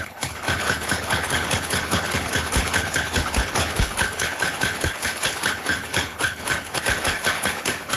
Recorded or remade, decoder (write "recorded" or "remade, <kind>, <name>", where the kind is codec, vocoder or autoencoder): remade, codec, HILCodec